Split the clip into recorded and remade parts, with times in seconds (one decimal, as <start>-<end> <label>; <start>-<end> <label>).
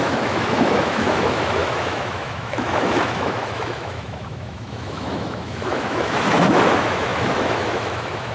0.0-8.3 remade